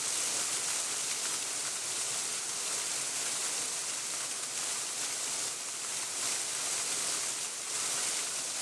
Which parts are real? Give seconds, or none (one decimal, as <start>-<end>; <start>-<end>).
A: 0.0-8.6